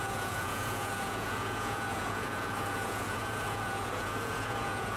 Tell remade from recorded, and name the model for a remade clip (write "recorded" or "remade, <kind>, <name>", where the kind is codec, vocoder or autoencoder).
remade, vocoder, Vocos